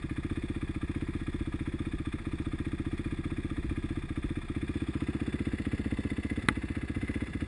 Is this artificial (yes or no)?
no